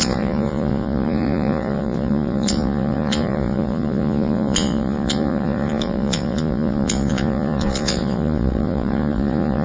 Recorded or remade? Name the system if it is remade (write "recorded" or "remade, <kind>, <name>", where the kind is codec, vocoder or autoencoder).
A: remade, vocoder, Vocos